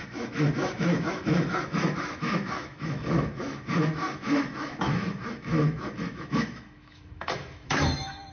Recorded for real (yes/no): no